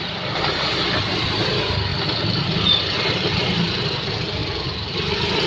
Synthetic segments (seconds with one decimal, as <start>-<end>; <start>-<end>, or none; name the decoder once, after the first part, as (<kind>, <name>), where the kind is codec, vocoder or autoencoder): 0.0-5.5 (vocoder, BigVGAN v2)